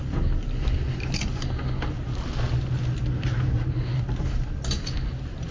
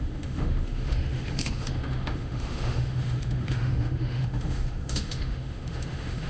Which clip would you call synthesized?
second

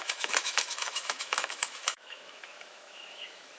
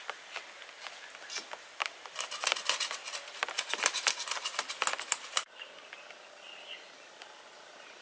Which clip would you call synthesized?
first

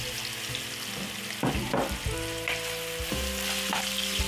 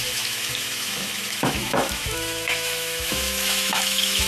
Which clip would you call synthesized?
second